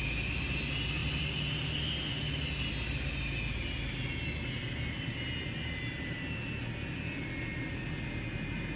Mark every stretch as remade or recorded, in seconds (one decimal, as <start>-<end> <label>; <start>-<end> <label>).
0.0-8.8 recorded

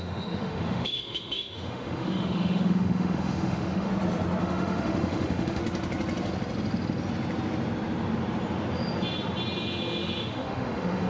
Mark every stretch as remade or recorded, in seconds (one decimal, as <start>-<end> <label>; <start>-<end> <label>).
0.0-3.9 remade; 3.9-4.4 recorded; 4.4-5.6 remade; 5.6-10.2 recorded; 10.2-11.1 remade

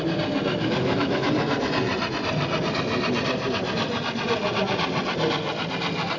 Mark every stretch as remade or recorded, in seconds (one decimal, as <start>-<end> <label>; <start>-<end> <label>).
0.0-0.5 recorded; 0.5-1.3 remade; 1.3-6.2 recorded